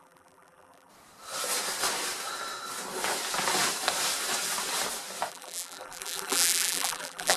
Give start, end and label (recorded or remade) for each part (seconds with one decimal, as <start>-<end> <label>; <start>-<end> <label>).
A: 0.0-0.9 remade; 0.9-5.3 recorded; 5.3-7.4 remade